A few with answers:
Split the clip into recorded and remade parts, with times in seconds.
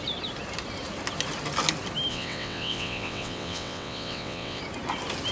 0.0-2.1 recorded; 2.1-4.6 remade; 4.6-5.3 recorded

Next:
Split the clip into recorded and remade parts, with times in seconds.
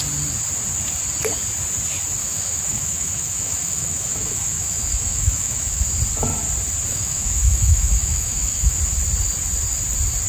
0.0-2.2 recorded; 2.2-5.8 remade; 5.8-6.9 recorded; 6.9-8.8 remade; 8.8-10.3 recorded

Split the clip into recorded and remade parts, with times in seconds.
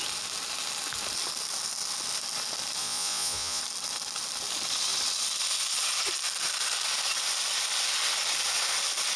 0.0-2.8 recorded; 2.8-3.6 remade; 3.6-9.2 recorded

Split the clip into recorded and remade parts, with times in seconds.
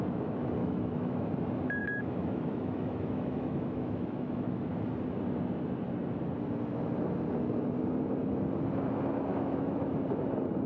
0.0-0.6 recorded; 0.6-1.3 remade; 1.3-1.8 recorded; 1.8-4.7 remade; 4.7-9.3 recorded; 9.3-9.9 remade; 9.9-10.7 recorded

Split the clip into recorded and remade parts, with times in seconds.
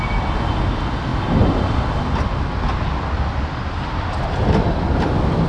0.0-5.5 recorded